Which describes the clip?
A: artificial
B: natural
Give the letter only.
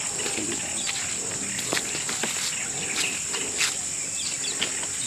B